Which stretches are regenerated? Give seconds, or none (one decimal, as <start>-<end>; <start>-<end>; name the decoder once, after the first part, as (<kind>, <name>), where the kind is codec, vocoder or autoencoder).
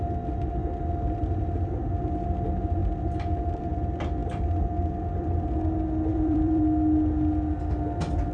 4.2-4.7 (vocoder, BigVGAN v2); 6.1-6.6